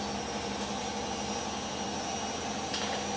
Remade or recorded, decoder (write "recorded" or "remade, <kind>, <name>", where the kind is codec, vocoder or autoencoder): recorded